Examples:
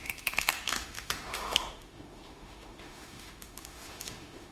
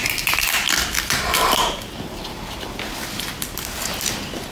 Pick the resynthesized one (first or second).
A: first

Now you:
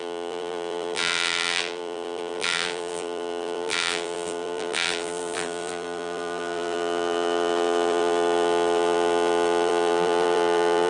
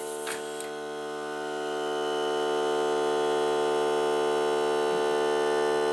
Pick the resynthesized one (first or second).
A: first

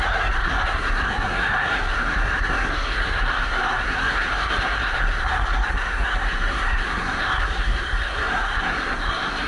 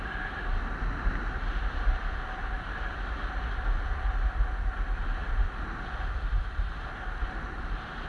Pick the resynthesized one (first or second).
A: first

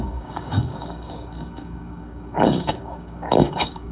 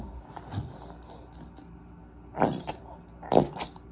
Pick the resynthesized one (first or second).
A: first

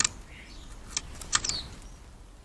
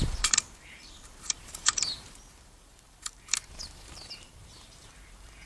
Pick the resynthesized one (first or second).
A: second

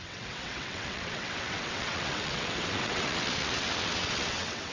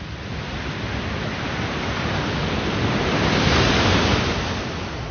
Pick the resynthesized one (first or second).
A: first